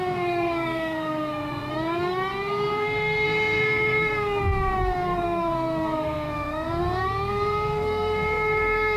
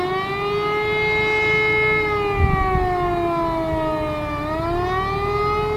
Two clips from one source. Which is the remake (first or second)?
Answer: first